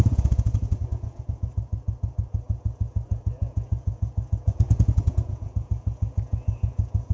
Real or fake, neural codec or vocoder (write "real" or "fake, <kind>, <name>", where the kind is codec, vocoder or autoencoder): fake, vocoder, Vocos